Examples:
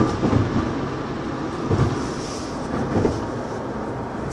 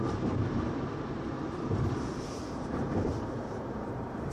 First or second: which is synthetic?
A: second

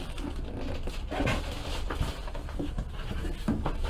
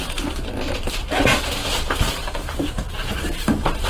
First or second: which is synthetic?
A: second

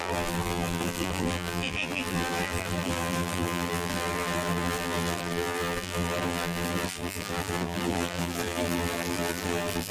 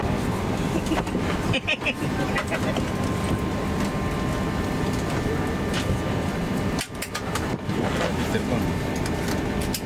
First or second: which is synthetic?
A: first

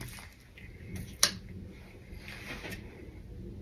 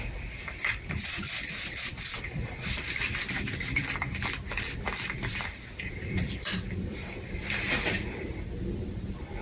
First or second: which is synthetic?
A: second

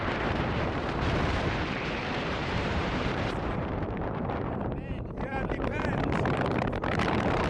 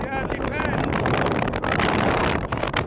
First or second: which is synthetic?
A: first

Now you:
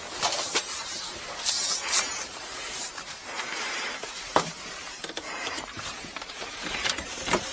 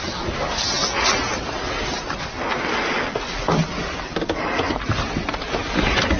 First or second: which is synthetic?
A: first